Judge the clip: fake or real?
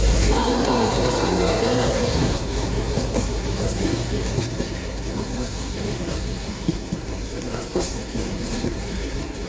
fake